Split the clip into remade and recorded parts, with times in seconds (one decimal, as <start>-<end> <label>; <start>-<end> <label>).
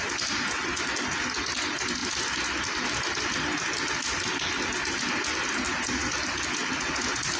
0.0-7.4 recorded